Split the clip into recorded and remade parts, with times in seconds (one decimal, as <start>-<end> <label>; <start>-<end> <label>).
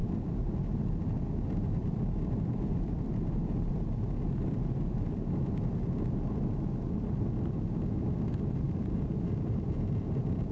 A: 0.0-1.3 remade; 1.3-1.8 recorded; 1.8-3.7 remade; 3.7-10.5 recorded